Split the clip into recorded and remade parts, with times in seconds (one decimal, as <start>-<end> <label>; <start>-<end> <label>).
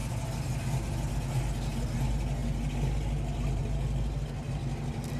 0.0-5.2 recorded